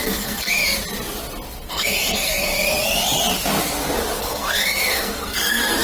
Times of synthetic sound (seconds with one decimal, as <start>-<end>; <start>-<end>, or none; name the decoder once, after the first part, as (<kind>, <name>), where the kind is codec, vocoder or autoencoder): 0.0-0.6 (codec, SNAC); 1.7-2.5; 4.2-5.8